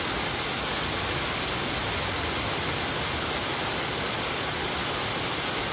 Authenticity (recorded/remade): recorded